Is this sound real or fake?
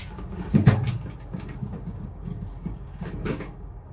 fake